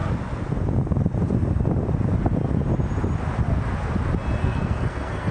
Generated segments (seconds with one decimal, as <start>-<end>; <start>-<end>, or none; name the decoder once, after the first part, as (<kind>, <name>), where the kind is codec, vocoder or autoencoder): 4.4-5.3 (codec, SNAC)

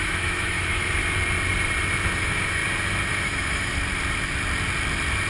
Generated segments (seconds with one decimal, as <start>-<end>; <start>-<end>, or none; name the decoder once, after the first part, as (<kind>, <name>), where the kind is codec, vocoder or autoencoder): 0.0-1.0 (autoencoder, DAC-VAE); 2.2-2.6; 3.1-3.7